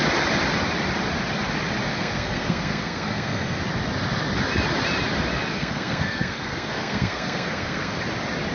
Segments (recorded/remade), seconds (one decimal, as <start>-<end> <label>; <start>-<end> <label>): 0.0-1.9 recorded; 1.9-3.6 remade; 3.6-5.5 recorded; 5.5-8.0 remade; 8.0-8.5 recorded

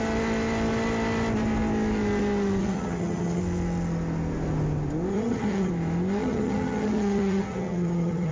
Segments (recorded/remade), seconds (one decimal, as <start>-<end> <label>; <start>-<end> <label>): 0.0-2.6 recorded; 2.6-3.4 remade; 3.4-5.1 recorded; 5.1-5.7 remade; 5.7-6.2 recorded; 6.2-8.3 remade

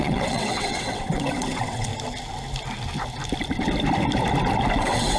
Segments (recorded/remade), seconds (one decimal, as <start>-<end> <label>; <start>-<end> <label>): 0.0-1.9 remade; 1.9-4.8 recorded; 4.8-5.2 remade